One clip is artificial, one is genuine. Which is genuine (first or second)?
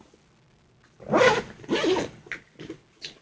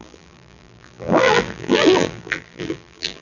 first